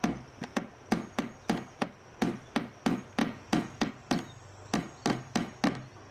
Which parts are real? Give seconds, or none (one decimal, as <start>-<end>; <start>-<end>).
0.0-3.2; 3.9-6.1